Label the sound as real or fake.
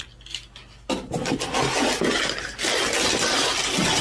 real